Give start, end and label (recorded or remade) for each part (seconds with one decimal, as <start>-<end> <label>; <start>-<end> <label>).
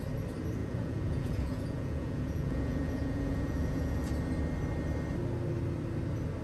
0.0-0.6 recorded; 0.6-4.1 remade; 4.1-6.4 recorded